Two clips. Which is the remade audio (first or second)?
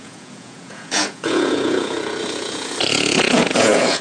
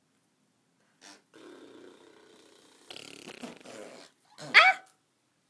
first